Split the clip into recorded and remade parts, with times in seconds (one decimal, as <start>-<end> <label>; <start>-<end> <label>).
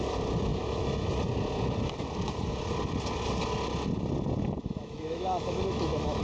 0.0-0.5 recorded; 0.5-1.1 remade; 1.1-4.6 recorded; 4.6-6.2 remade